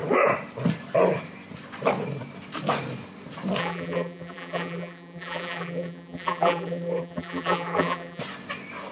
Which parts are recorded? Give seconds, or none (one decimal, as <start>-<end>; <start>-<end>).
0.0-3.6; 8.2-8.9